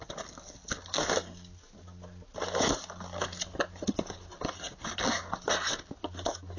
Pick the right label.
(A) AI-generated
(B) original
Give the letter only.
B